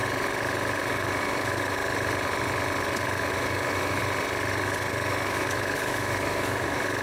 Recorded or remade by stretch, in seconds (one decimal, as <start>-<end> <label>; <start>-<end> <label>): 0.0-0.9 recorded; 0.9-1.8 remade; 1.8-3.3 recorded; 3.3-4.0 remade; 4.0-4.9 recorded; 4.9-7.0 remade